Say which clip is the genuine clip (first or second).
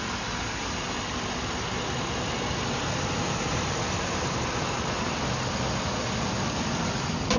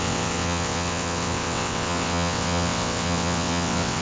first